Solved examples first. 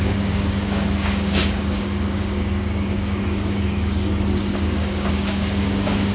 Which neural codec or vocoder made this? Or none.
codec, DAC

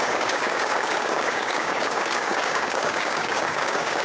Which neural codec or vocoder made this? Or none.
codec, DAC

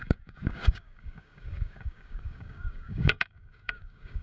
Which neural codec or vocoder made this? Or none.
codec, DAC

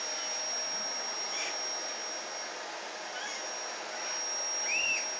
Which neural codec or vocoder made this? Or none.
none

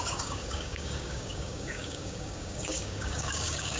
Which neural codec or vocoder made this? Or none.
codec, DAC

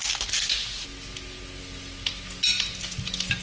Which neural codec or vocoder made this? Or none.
none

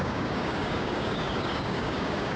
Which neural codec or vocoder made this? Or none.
codec, DAC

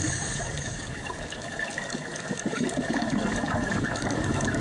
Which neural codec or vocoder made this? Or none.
codec, DAC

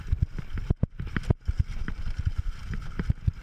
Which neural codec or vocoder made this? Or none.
none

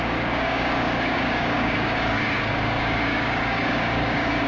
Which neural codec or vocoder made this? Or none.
codec, DAC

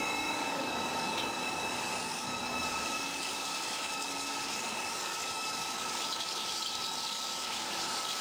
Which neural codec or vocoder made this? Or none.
codec, DAC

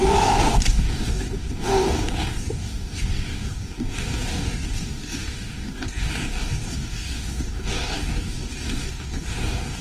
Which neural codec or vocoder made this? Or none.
codec, DAC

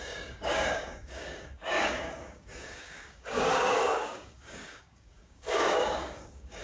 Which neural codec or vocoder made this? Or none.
codec, DAC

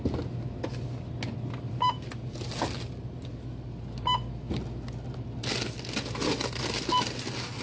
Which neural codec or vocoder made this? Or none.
none